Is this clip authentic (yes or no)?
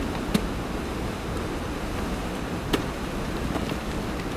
yes